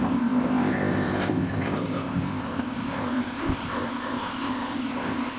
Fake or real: fake